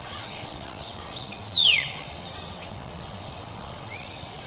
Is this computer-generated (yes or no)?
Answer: yes